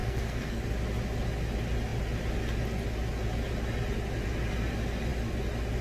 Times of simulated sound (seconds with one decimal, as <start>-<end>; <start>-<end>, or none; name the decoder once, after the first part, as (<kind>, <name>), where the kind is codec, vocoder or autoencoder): 0.0-0.6 (codec, SNAC)